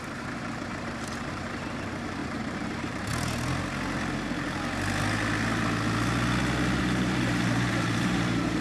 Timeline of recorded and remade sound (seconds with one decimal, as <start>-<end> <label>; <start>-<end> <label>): 0.0-3.1 remade; 3.1-6.8 recorded; 6.8-8.6 remade